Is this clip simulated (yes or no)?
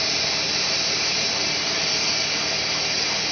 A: no